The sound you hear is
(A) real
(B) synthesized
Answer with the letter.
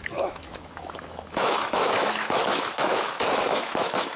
B